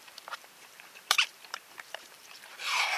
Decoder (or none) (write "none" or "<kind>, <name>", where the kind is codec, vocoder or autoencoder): vocoder, BigVGAN v2